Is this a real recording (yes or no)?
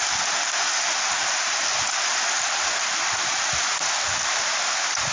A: yes